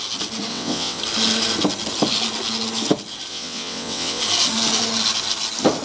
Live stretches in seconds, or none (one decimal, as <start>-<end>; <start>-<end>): 0.0-0.5; 1.0-3.3; 4.2-5.8